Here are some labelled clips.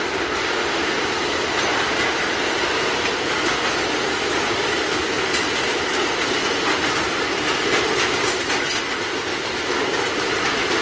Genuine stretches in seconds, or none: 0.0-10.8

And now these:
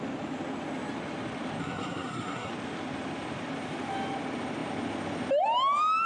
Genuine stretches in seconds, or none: 0.0-1.6; 2.5-6.1